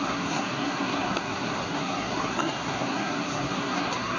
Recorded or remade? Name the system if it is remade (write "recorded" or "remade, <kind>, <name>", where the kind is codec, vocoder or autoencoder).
remade, codec, SNAC